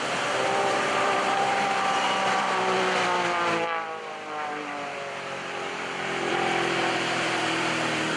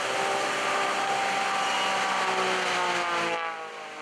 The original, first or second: second